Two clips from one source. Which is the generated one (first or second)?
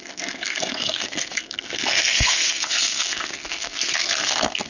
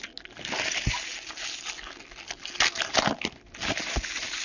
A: first